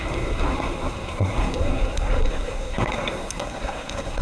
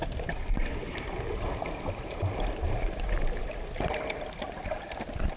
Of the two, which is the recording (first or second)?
second